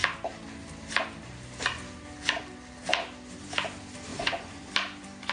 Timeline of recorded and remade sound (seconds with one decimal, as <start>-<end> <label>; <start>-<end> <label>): 0.0-4.1 recorded; 4.1-4.7 remade; 4.7-5.3 recorded